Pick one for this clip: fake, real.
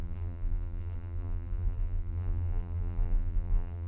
fake